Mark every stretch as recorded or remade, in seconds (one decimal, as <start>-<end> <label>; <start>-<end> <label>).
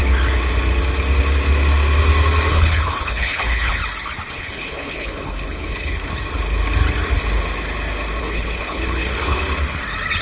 0.0-2.5 recorded; 2.5-3.8 remade; 3.8-4.3 recorded; 4.3-6.1 remade; 6.1-8.2 recorded; 8.2-9.4 remade; 9.4-10.2 recorded